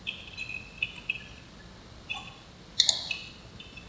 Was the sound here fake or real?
real